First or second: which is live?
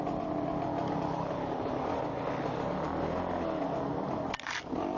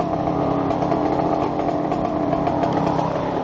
first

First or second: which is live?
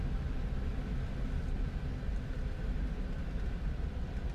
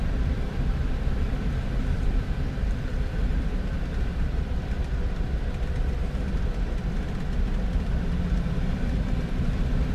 first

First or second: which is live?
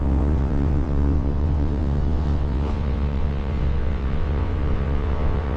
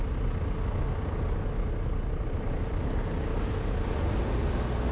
second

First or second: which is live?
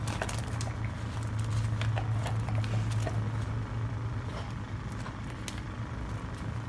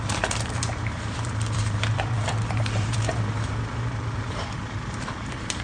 first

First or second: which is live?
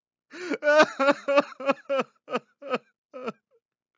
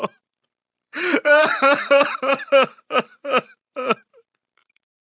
first